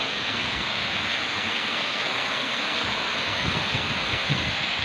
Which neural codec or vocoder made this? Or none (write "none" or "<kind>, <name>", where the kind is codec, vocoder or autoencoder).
codec, SNAC